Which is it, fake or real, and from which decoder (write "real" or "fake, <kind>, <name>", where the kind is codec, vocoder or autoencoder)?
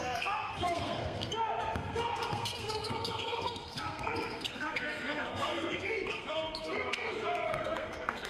fake, codec, SNAC